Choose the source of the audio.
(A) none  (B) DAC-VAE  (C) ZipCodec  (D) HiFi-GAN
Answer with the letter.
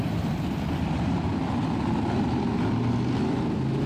A